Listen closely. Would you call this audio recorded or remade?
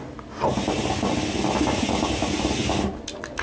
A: recorded